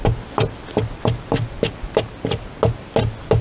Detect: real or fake real